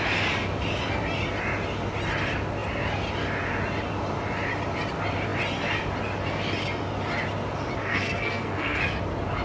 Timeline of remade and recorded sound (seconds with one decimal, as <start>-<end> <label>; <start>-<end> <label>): 0.0-7.8 recorded; 7.8-8.8 remade; 8.8-9.4 recorded